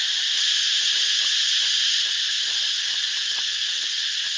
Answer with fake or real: real